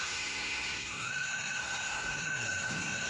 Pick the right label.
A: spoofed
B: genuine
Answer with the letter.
A